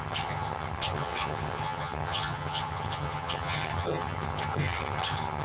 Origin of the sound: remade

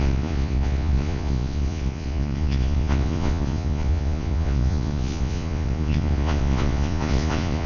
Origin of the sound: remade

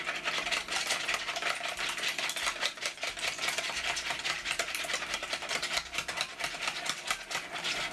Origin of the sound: recorded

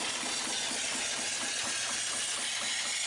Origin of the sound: recorded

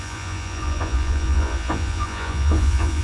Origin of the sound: remade